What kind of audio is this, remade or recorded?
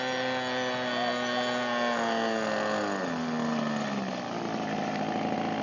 recorded